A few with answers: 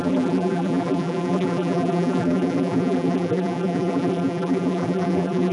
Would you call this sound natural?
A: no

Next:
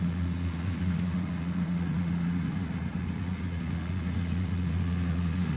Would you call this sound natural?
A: no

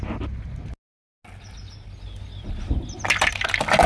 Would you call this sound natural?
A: yes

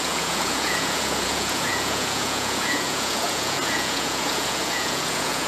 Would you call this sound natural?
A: no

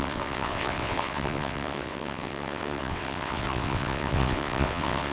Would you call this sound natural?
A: no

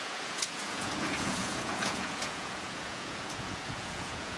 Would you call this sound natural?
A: no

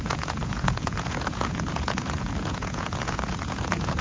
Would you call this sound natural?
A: no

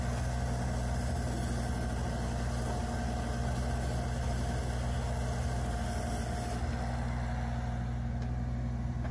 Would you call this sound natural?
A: yes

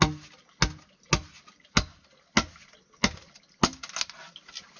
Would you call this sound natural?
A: yes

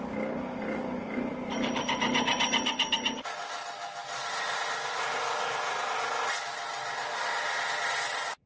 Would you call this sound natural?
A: yes